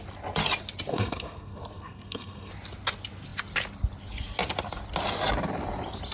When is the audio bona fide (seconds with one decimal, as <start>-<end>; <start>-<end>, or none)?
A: 0.0-0.9; 2.5-6.1